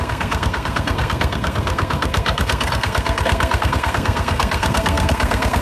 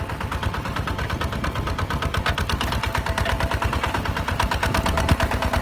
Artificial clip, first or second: first